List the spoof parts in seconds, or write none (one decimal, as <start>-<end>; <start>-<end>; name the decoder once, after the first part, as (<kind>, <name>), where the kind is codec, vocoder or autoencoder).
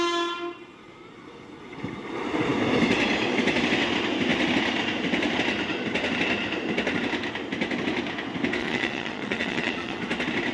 8.6-10.0 (vocoder, Vocos)